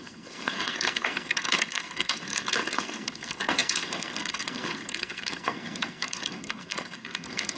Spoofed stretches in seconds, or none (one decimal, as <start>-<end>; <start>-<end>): 0.0-7.6